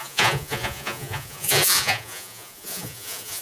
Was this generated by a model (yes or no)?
yes